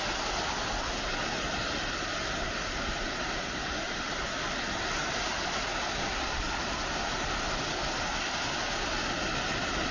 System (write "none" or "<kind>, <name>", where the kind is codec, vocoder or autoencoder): none